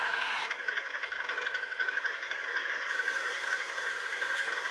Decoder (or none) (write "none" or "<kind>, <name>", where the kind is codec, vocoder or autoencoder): codec, SNAC